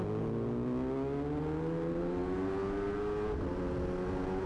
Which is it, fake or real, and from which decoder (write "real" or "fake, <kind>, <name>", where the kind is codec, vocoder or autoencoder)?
real